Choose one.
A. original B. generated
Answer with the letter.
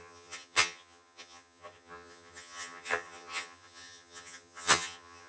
B